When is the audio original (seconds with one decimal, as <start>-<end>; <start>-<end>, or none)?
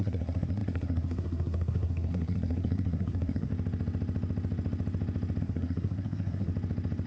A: 3.5-5.4; 6.5-7.1